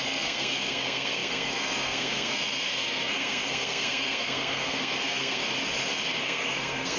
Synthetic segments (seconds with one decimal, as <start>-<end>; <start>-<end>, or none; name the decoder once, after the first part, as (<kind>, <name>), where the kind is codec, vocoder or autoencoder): 0.0-5.4 (codec, SNAC); 6.2-7.0